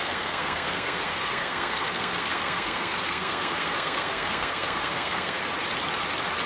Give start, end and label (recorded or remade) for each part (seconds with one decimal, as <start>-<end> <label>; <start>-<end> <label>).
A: 0.0-5.4 remade; 5.4-6.5 recorded